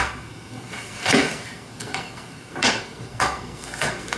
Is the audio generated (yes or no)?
yes